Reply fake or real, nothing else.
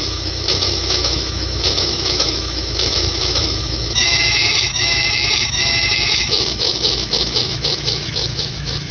fake